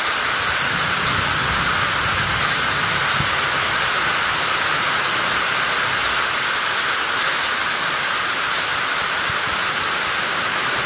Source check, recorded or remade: recorded